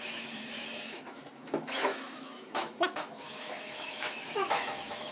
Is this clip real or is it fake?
fake